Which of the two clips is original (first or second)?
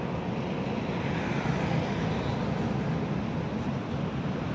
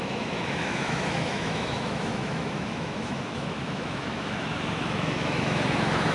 first